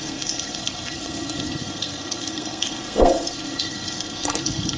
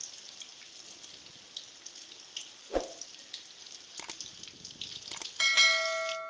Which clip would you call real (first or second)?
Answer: second